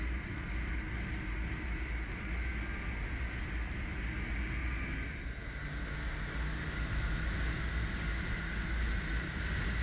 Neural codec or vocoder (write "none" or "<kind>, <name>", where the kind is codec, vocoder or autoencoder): none